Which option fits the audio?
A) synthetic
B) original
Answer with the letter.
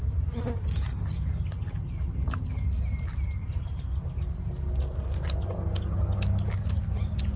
B